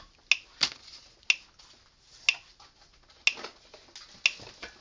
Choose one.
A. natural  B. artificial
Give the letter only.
A